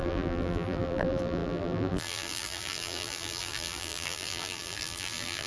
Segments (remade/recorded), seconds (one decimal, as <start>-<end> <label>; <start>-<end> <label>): 0.0-5.5 remade

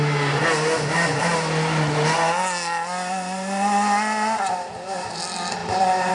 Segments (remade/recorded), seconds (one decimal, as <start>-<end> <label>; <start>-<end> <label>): 0.0-6.1 recorded